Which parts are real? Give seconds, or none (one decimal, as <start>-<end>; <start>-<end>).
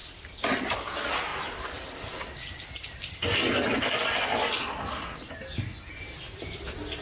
0.9-7.0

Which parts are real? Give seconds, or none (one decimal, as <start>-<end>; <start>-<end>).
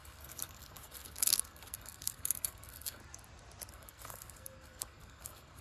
3.0-3.7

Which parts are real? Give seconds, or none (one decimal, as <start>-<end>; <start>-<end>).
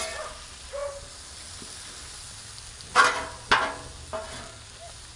0.0-5.2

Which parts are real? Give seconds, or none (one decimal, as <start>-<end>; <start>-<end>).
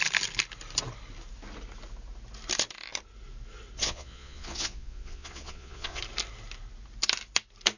0.0-3.8; 6.0-7.8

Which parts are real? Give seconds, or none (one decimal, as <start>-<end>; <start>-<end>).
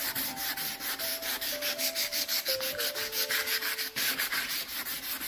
0.0-1.1; 4.2-5.3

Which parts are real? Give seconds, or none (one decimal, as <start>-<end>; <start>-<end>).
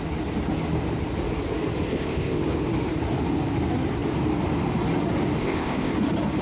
0.0-1.9; 2.4-5.4; 5.9-6.4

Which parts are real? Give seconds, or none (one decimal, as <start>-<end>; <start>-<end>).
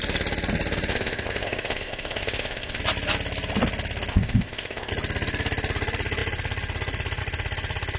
0.0-0.9; 2.8-4.1; 4.9-8.0